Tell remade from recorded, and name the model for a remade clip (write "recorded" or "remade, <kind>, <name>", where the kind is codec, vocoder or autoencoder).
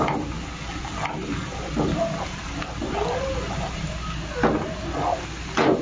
recorded